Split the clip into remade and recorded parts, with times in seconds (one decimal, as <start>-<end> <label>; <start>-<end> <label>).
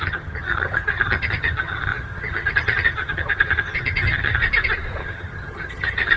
0.0-4.4 remade; 4.4-5.0 recorded; 5.0-6.2 remade